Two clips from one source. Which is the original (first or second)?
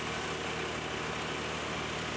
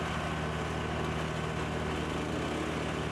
second